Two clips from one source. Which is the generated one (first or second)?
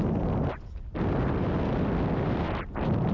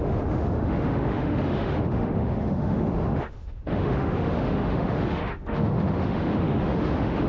second